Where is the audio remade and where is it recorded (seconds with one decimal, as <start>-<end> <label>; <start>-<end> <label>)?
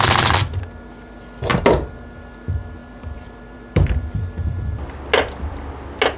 0.0-2.8 recorded; 2.8-5.0 remade; 5.0-6.2 recorded